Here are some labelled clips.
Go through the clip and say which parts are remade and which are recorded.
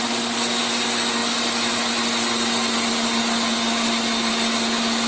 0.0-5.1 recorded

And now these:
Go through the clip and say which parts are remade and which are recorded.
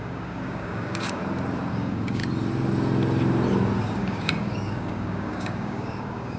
0.0-1.2 remade; 1.2-1.7 recorded; 1.7-2.2 remade; 2.2-3.8 recorded; 3.8-6.4 remade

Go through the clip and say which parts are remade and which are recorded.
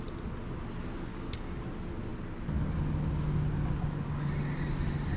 0.0-1.1 recorded; 1.1-1.6 remade; 1.6-5.2 recorded